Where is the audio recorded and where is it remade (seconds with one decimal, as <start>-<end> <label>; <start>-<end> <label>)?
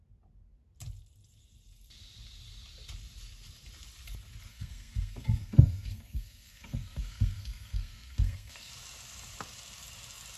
0.0-4.5 recorded; 4.5-8.7 remade; 8.7-10.4 recorded